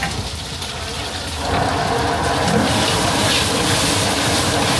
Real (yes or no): yes